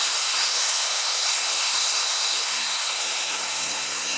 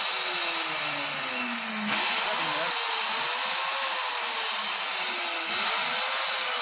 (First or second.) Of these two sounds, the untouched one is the second